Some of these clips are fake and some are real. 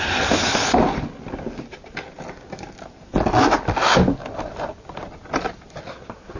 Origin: real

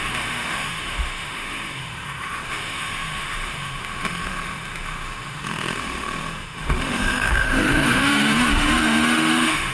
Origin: fake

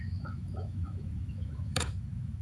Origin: fake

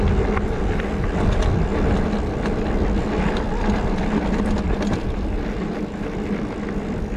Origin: real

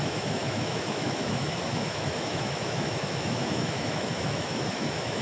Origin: fake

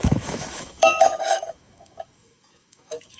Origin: fake